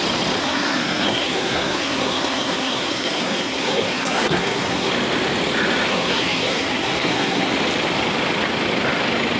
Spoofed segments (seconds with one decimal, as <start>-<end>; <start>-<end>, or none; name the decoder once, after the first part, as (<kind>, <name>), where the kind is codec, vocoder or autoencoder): 0.4-4.9 (codec, SNAC); 5.9-7.5